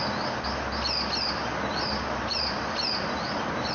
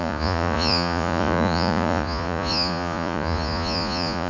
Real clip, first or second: first